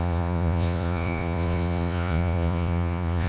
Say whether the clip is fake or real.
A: fake